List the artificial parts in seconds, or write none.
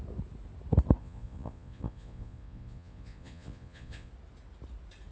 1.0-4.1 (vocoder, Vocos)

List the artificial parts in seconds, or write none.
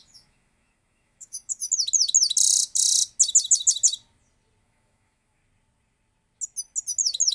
0.0-1.6 (autoencoder, DAC-VAE); 4.6-5.4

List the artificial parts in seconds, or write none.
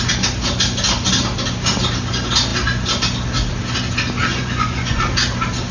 4.3-5.0 (vocoder, Vocos)